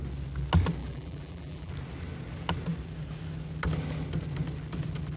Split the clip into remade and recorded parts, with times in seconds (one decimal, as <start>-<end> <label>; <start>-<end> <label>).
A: 0.0-0.8 recorded; 0.8-1.7 remade; 1.7-5.2 recorded